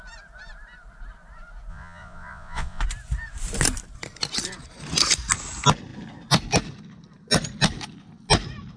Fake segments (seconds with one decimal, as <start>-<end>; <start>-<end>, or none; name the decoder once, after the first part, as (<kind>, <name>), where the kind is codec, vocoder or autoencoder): 1.7-2.8 (vocoder, Vocos)